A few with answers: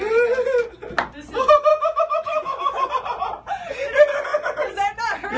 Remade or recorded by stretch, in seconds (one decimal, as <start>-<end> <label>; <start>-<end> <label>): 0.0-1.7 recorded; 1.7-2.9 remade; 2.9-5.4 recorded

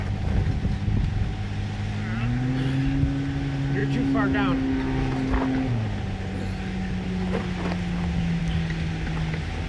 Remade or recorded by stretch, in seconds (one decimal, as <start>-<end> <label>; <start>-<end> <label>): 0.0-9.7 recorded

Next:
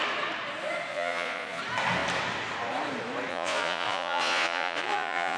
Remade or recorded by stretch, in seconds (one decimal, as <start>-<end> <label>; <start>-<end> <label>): 0.0-0.9 recorded; 0.9-1.6 remade; 1.6-3.3 recorded; 3.3-5.4 remade

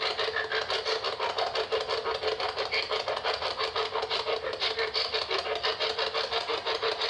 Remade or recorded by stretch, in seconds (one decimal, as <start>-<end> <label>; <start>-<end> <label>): 0.0-7.1 recorded

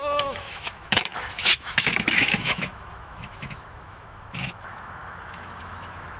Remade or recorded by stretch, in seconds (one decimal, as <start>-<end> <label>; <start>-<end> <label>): 0.0-6.2 remade

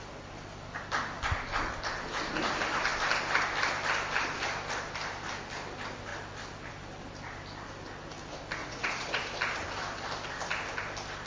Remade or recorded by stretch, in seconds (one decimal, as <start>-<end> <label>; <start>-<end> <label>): 0.0-8.6 recorded; 8.6-9.2 remade; 9.2-11.3 recorded

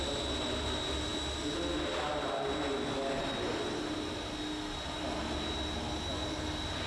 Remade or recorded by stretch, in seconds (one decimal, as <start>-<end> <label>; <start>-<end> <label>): 0.0-6.9 recorded

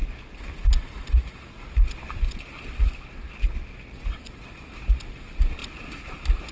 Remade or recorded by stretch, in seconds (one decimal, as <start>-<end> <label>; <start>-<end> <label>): 0.0-6.5 recorded